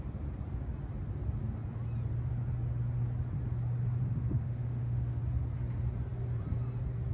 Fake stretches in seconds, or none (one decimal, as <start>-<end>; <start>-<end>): 4.0-5.2